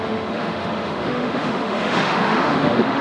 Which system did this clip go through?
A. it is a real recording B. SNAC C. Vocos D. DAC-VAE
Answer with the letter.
D